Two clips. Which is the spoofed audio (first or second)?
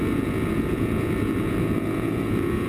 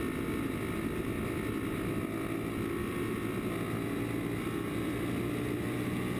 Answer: first